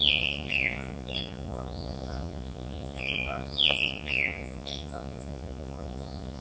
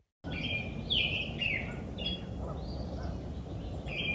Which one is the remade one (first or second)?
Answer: first